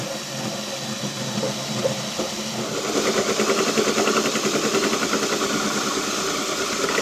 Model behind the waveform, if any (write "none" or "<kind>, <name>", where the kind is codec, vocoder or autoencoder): none